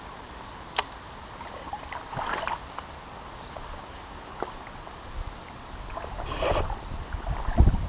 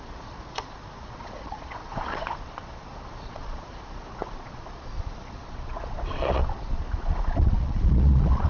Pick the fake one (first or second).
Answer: second